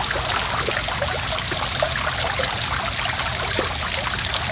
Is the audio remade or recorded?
recorded